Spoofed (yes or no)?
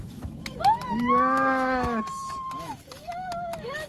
yes